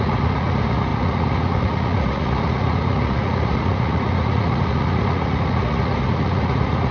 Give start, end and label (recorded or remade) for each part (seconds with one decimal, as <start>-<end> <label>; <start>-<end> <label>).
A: 0.0-6.9 remade